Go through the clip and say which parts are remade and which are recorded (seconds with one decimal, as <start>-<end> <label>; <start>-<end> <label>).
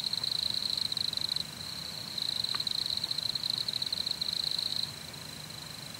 0.0-0.6 recorded; 0.6-3.8 remade; 3.8-4.7 recorded; 4.7-6.0 remade